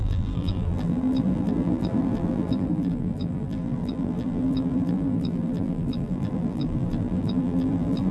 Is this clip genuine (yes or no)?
no